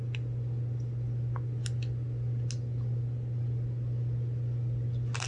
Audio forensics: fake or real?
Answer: real